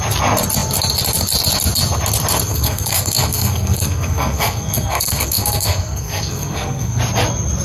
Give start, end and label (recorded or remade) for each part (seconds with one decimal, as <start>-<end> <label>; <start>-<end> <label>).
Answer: 0.0-2.5 recorded; 2.5-7.0 remade; 7.0-7.6 recorded